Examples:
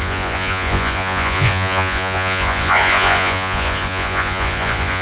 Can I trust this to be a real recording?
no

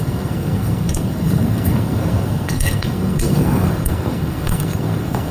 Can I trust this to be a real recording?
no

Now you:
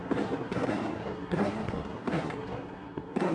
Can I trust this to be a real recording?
no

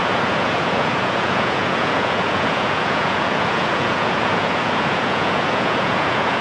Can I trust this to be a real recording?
no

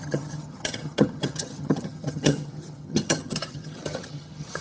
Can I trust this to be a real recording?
no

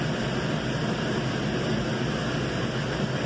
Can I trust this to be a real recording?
yes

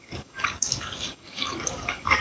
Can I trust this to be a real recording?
no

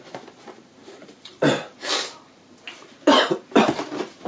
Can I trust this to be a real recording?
yes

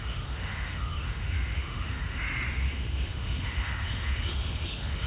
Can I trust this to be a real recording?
no